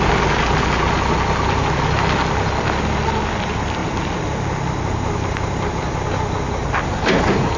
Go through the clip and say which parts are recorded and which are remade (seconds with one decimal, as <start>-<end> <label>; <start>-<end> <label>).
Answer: 0.0-7.6 recorded

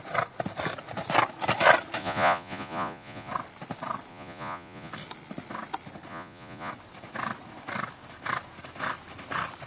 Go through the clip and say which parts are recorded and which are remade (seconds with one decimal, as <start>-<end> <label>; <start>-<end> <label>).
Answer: 0.0-2.0 recorded; 2.0-3.3 remade; 3.3-4.1 recorded; 4.1-4.9 remade; 4.9-6.1 recorded; 6.1-6.7 remade; 6.7-9.7 recorded

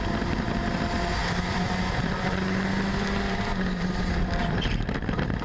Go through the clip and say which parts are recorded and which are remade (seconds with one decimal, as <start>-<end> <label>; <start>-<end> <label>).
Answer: 0.0-1.2 remade; 1.2-3.3 recorded; 3.3-5.4 remade

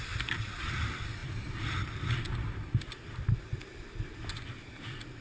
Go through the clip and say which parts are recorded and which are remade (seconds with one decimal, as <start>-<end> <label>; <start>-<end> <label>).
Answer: 0.0-0.6 remade; 0.6-1.2 recorded; 1.2-4.3 remade; 4.3-5.2 recorded